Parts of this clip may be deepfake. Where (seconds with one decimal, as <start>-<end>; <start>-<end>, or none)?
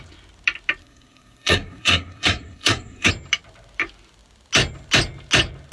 0.8-3.1